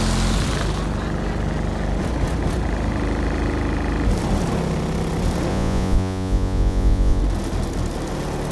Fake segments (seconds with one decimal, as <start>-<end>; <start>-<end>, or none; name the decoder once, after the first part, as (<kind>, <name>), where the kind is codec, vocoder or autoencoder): 5.5-7.2 (vocoder, Vocos)